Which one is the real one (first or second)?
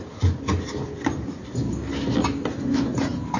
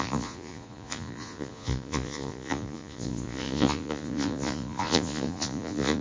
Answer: first